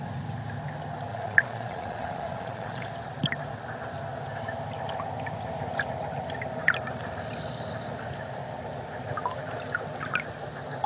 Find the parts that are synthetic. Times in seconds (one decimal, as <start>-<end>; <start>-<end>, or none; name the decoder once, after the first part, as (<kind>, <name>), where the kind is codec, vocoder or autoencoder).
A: 1.1-2.9 (vocoder, Vocos)